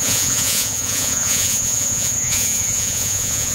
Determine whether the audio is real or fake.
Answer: fake